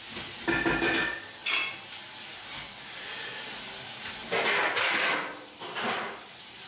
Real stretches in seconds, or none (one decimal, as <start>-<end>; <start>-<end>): 0.0-6.7